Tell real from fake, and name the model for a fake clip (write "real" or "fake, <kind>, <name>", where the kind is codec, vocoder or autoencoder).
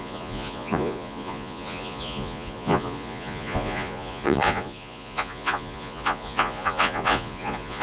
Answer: fake, vocoder, Vocos